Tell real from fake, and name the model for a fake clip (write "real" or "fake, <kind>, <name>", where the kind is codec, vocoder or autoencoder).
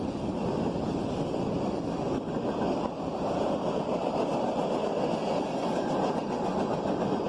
real